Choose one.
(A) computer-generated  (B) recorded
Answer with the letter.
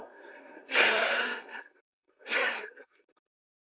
A